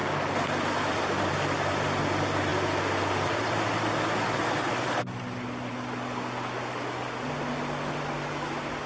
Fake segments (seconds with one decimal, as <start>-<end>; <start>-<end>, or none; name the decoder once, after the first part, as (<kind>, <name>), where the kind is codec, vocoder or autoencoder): none